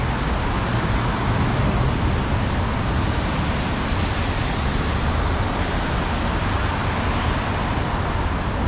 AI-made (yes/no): no